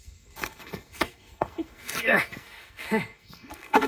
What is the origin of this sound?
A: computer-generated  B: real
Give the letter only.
A